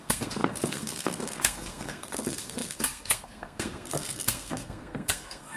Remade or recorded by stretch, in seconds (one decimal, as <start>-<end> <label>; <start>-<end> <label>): 0.0-5.6 remade